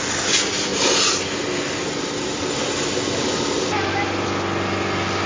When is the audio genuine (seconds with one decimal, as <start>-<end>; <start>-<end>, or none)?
0.0-5.3